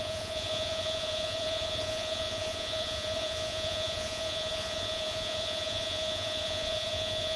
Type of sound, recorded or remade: remade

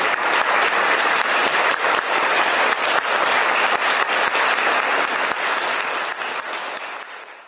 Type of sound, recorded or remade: recorded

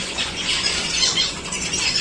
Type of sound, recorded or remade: remade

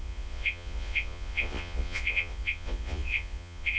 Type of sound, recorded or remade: remade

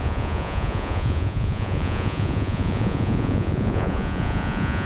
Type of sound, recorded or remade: remade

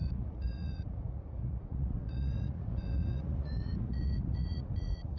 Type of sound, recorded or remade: remade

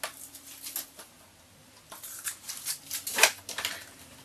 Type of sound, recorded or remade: recorded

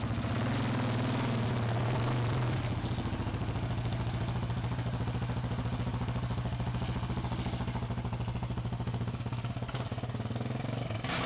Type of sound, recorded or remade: recorded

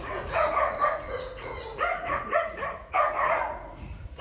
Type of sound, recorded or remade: remade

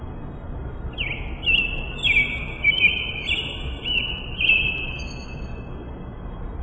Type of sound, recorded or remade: recorded